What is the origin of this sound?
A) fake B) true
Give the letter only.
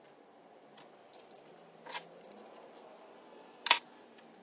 B